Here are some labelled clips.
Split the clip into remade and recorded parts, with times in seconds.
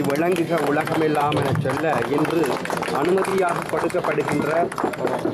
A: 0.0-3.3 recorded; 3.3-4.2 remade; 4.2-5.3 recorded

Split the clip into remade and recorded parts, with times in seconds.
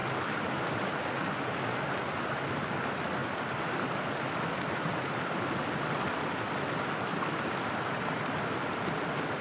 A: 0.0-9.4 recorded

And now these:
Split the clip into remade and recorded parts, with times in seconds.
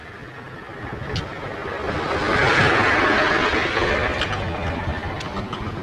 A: 0.0-5.8 recorded